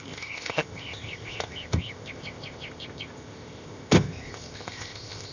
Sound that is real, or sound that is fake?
fake